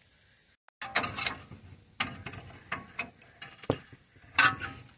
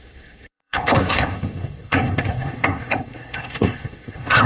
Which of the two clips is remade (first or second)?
second